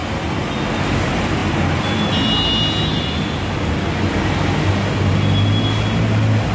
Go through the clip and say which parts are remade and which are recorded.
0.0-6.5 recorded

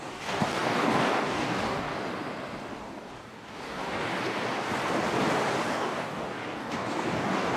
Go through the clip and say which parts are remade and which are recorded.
0.0-1.9 remade; 1.9-2.8 recorded; 2.8-4.2 remade; 4.2-5.7 recorded; 5.7-7.6 remade

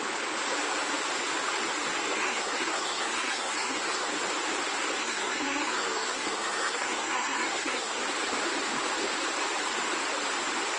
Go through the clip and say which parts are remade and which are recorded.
0.0-2.0 recorded; 2.0-4.1 remade; 4.1-5.0 recorded; 5.0-8.0 remade; 8.0-10.8 recorded